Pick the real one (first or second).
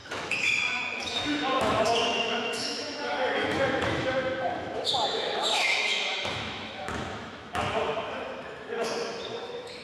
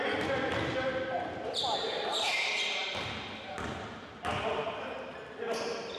second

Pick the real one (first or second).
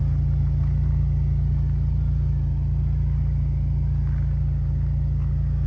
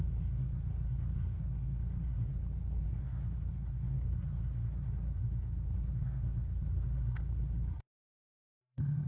first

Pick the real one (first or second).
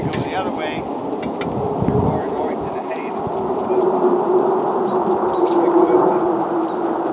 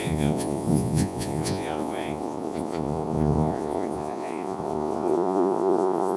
first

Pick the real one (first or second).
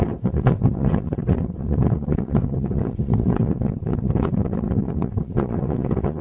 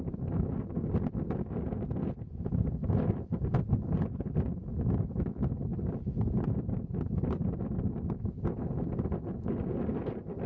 second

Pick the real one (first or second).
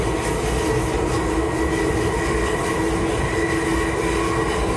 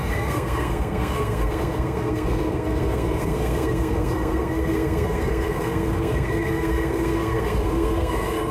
first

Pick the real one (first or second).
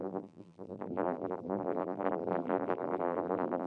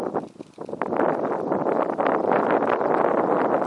second